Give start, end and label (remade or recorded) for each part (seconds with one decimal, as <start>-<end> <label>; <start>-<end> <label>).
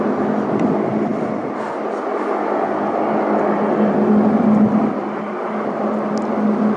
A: 0.0-6.8 recorded